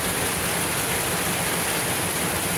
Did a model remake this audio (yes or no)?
no